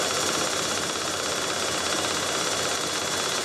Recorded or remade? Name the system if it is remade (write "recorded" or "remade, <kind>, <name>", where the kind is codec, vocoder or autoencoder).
recorded